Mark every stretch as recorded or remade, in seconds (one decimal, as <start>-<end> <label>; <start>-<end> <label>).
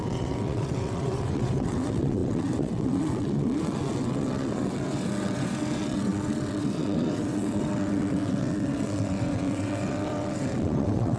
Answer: 0.0-11.2 remade